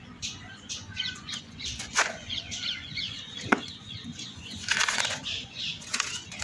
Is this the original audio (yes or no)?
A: no